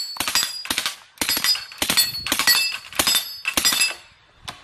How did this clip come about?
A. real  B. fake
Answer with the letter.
A